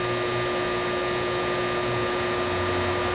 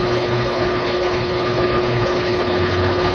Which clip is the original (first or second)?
first